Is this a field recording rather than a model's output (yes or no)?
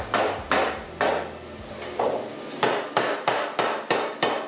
yes